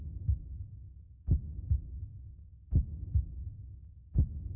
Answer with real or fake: fake